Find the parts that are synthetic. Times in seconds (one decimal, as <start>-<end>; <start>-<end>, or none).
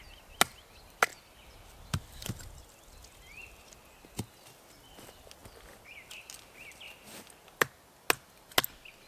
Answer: none